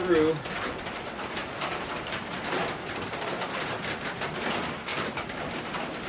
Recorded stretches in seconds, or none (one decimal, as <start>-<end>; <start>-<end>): 0.0-1.4; 3.7-4.9